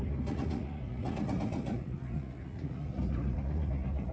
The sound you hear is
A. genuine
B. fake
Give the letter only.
B